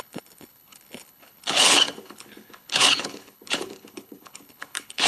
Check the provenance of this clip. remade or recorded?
remade